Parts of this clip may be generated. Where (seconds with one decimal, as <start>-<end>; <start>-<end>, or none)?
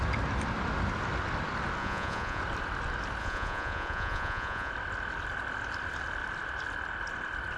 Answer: 1.8-2.4; 3.2-4.7